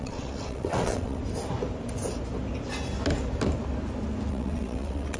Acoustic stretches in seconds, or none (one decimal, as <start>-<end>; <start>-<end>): 1.2-4.3